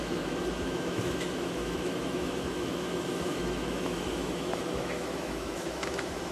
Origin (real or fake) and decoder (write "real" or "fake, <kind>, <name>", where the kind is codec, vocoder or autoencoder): fake, autoencoder, DAC-VAE